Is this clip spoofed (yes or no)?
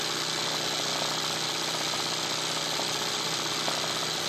no